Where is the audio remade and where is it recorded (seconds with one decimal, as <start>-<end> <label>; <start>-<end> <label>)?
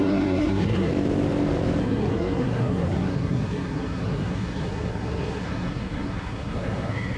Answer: 0.0-0.9 remade; 0.9-1.8 recorded; 1.8-7.2 remade